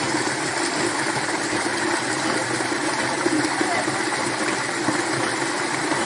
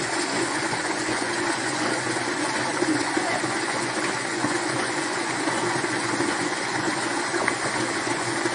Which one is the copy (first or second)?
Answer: second